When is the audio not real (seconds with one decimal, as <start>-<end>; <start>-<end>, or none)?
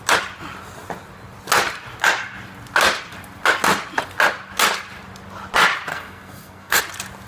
5.9-6.8